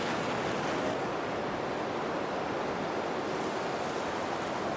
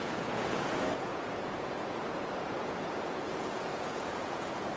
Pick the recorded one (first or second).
first